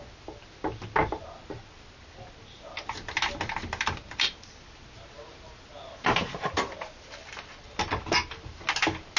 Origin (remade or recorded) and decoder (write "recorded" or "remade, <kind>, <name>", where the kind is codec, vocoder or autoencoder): recorded